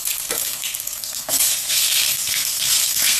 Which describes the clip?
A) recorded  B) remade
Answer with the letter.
B